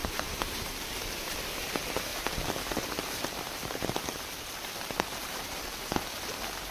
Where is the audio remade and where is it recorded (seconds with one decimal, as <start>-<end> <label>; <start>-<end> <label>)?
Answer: 0.0-1.5 remade; 1.5-2.1 recorded; 2.1-6.1 remade; 6.1-6.7 recorded